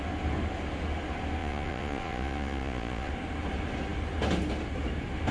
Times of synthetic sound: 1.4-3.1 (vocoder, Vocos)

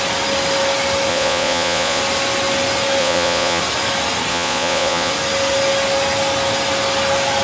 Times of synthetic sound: 1.1-2.0 (vocoder, Vocos); 3.0-3.6; 4.3-5.1

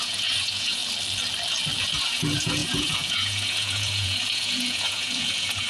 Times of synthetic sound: 0.0-0.8 (vocoder, Vocos); 1.8-5.7

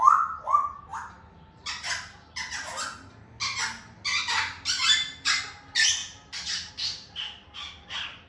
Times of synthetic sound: none

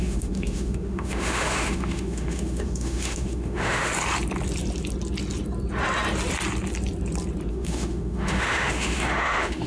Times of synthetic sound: 0.0-3.9 (autoencoder, DAC-VAE); 7.5-9.7

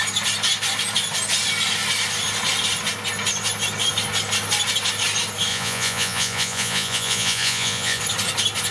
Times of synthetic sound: 5.5-8.0 (vocoder, Vocos)

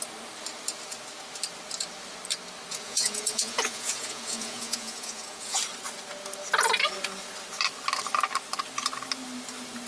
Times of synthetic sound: 2.7-5.6 (vocoder, Vocos)

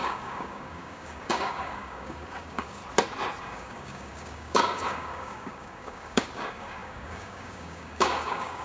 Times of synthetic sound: 0.0-2.8 (codec, DAC); 3.4-8.6